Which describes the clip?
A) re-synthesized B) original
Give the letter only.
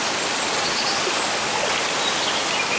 B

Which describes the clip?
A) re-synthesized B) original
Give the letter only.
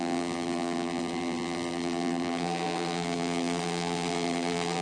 A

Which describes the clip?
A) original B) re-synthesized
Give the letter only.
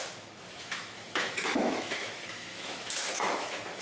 B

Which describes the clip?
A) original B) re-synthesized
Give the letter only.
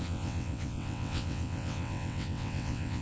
B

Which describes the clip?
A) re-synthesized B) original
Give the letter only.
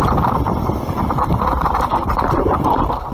A